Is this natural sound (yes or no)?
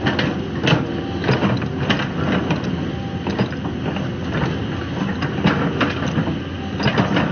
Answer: yes